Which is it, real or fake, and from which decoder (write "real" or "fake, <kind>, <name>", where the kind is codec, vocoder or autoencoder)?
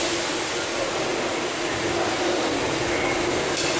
real